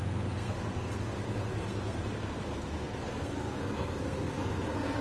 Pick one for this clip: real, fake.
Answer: fake